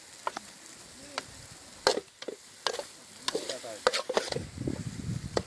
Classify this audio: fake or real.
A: real